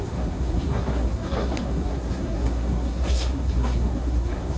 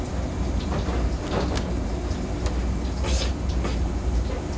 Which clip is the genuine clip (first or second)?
second